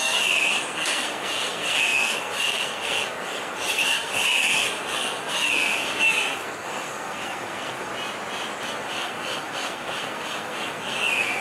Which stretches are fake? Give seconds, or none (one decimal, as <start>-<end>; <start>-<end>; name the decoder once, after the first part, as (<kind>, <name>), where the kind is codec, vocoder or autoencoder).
0.0-7.9 (codec, SNAC); 8.7-11.4